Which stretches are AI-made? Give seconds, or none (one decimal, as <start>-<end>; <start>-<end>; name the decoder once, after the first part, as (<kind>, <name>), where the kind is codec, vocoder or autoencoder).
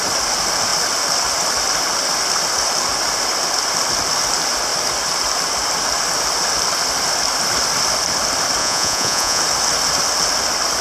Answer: 8.6-9.4 (vocoder, Vocos)